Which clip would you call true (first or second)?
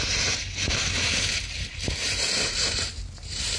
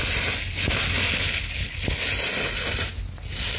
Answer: second